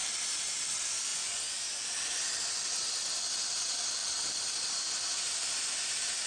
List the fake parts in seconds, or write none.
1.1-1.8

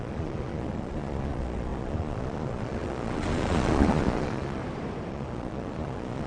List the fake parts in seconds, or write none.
0.0-4.6; 5.1-6.3